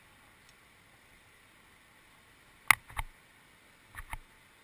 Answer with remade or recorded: recorded